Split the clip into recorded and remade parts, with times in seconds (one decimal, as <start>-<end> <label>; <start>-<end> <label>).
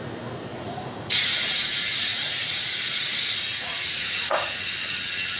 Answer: 0.0-0.5 recorded; 0.5-1.6 remade; 1.6-2.1 recorded; 2.1-4.7 remade; 4.7-5.4 recorded